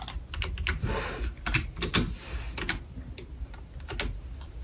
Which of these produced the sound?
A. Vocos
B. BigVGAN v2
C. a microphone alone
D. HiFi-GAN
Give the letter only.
C